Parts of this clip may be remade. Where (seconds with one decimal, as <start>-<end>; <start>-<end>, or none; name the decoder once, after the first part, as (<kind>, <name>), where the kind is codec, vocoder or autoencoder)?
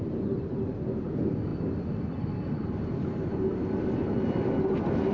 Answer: none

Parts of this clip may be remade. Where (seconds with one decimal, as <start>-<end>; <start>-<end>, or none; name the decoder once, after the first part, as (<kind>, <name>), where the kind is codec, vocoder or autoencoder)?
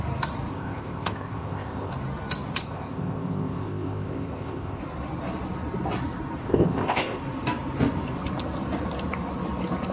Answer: 0.5-1.9 (codec, ZipCodec); 2.6-4.8; 6.4-7.2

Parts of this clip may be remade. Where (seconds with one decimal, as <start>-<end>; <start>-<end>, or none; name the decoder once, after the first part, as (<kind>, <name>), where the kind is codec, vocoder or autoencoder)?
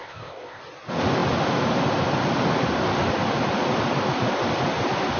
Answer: 0.0-0.6 (codec, ZipCodec)